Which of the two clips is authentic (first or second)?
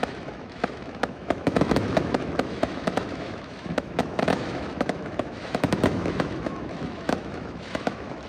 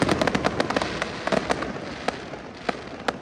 second